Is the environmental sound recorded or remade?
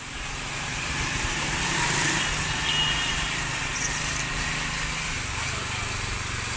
recorded